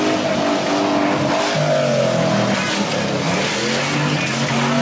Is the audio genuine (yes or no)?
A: yes